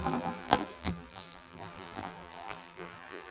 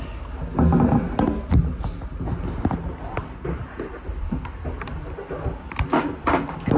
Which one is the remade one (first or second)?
first